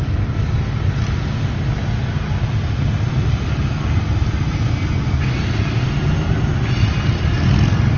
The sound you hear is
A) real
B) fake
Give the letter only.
A